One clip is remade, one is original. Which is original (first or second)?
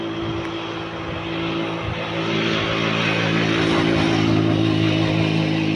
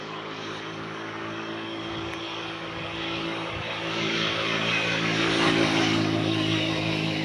first